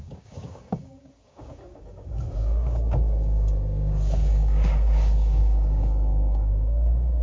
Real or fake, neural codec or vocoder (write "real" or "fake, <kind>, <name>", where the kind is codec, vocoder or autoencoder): fake, codec, DAC